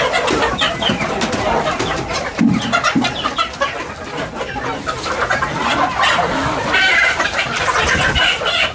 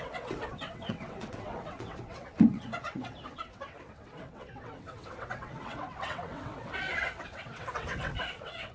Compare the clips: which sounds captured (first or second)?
first